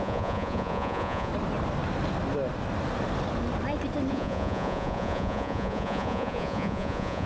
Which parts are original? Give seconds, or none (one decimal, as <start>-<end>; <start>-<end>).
1.3-4.1